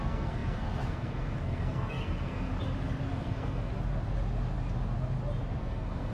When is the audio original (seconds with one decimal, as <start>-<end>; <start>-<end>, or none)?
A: 2.5-3.1; 3.7-5.6